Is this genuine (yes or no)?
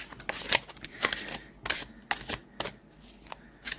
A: yes